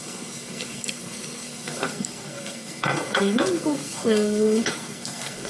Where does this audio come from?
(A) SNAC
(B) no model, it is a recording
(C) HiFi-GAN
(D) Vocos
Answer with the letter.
A